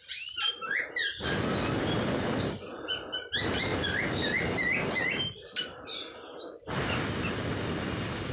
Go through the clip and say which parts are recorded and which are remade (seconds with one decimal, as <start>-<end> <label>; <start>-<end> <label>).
0.0-8.3 recorded